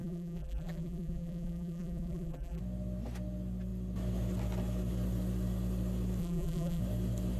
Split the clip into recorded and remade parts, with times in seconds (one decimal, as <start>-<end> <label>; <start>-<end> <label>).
0.0-2.6 remade; 2.6-6.2 recorded; 6.2-6.8 remade; 6.8-7.4 recorded